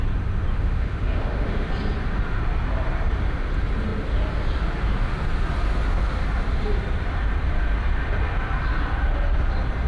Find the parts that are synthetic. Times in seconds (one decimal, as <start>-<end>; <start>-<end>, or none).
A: 0.5-1.7